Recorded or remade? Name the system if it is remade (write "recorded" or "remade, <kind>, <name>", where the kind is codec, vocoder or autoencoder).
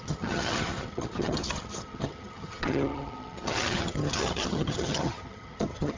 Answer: remade, vocoder, HiFi-GAN